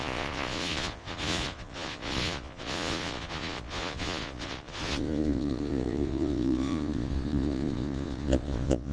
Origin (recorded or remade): remade